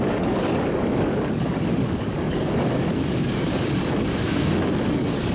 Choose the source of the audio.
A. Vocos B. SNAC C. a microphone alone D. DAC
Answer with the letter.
D